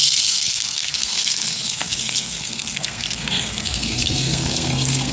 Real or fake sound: fake